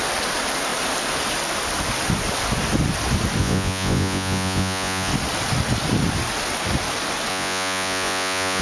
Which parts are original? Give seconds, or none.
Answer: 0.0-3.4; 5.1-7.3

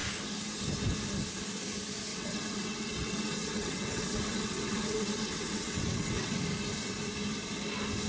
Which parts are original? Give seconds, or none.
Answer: 0.0-2.1; 6.4-8.1

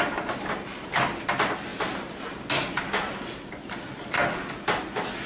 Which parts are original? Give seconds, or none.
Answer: 0.0-5.3

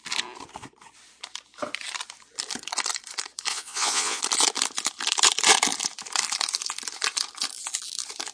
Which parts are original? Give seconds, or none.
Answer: 0.0-3.5; 4.2-8.3